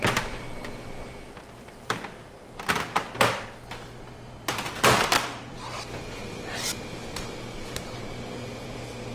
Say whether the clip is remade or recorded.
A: remade